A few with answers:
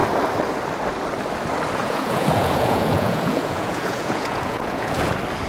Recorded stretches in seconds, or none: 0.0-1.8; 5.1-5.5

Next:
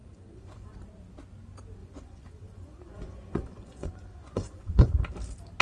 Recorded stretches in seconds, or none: 0.7-1.8; 4.9-5.6

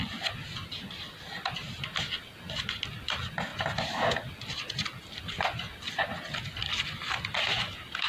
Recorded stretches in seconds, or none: 0.0-8.1